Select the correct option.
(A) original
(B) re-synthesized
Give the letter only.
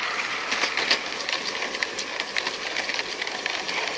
A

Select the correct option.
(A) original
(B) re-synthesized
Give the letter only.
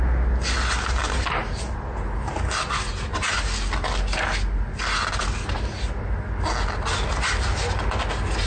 A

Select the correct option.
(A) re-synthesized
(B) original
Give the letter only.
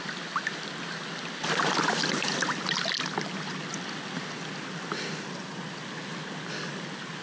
B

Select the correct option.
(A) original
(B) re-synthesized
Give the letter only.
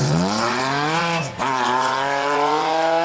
B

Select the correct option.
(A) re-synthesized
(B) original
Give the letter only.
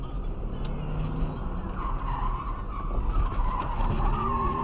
B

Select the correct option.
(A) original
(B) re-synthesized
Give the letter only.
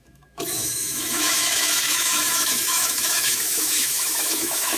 B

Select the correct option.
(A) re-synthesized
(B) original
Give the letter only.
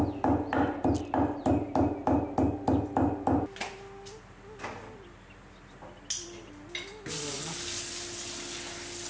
B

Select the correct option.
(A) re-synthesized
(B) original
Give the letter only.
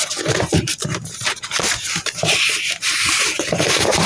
A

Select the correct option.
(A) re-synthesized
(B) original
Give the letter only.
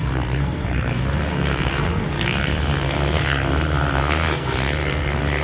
A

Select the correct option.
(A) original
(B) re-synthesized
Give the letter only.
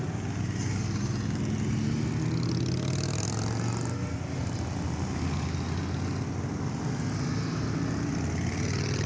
A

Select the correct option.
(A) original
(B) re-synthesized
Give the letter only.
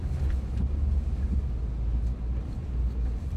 A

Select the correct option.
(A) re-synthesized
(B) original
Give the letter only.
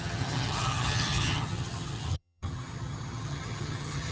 A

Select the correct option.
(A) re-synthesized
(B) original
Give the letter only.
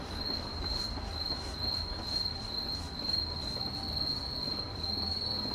B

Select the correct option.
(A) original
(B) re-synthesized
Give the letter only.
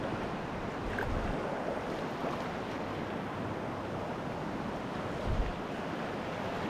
A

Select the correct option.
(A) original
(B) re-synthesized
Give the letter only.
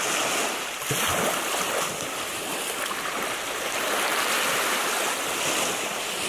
A